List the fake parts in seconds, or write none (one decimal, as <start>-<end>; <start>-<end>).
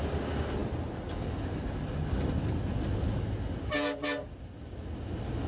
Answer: none